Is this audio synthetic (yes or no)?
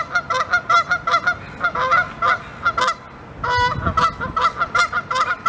no